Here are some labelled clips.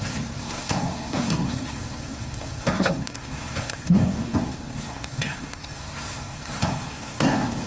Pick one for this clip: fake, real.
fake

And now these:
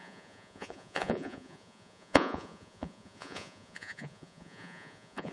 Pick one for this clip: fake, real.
fake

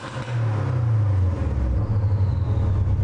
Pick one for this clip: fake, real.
real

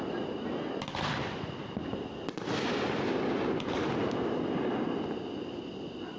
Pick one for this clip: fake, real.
real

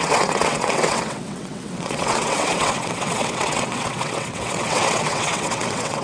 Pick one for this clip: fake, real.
fake